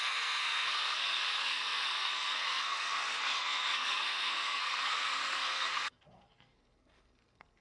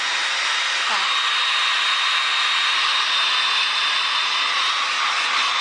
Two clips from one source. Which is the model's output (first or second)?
first